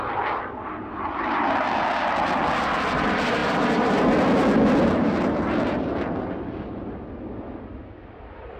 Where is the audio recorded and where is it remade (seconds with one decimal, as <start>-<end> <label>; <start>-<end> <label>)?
0.0-8.6 recorded